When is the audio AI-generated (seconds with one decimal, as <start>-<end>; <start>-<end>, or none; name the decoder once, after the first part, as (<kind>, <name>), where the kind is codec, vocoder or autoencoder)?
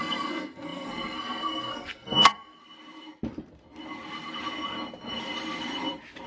0.0-2.6 (codec, SNAC)